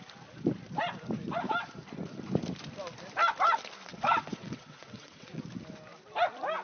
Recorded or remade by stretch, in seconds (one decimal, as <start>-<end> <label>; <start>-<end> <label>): 0.0-3.9 recorded; 3.9-5.4 remade; 5.4-6.6 recorded